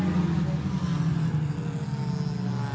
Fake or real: real